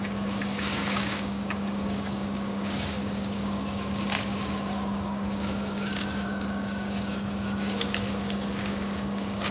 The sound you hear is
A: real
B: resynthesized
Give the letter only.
B